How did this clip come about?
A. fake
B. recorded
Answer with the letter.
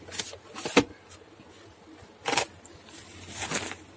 B